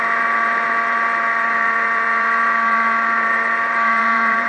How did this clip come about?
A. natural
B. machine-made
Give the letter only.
B